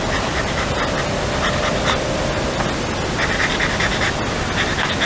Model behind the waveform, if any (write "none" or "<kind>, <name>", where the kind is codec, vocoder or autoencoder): none